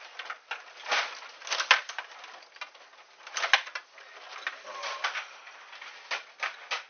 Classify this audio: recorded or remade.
recorded